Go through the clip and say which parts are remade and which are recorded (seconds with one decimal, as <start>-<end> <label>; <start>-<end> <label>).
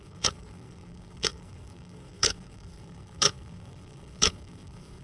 0.0-5.0 remade